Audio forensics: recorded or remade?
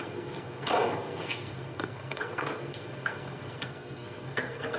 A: remade